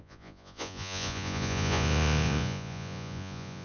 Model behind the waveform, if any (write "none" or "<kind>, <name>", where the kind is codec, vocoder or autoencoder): vocoder, Vocos